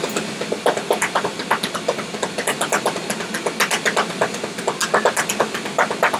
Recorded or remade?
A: recorded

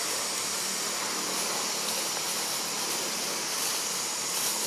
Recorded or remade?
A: recorded